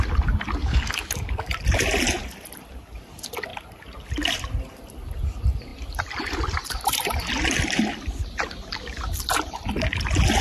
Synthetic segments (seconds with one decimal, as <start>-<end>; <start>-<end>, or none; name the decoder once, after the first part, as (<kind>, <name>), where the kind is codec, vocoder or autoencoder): 0.6-1.5 (codec, DAC)